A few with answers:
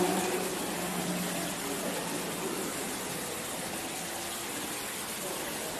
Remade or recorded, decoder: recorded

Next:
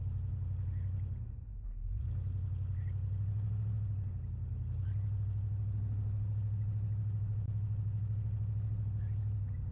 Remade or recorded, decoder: recorded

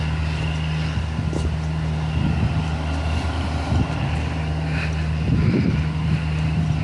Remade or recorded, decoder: remade, vocoder, BigVGAN v2